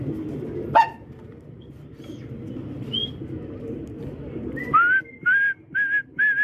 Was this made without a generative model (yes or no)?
yes